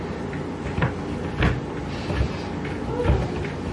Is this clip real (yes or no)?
yes